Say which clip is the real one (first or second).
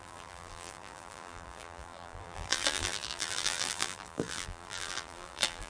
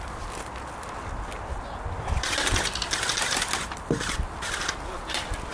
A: second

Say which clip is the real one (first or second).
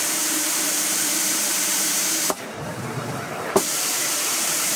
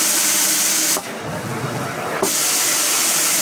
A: second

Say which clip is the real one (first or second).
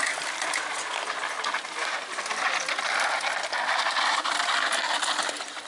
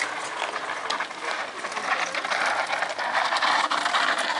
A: second